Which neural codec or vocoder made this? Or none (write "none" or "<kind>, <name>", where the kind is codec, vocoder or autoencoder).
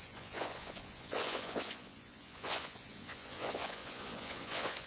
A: vocoder, Vocos